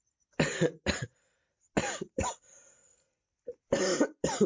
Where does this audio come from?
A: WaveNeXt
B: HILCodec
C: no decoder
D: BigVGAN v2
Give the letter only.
C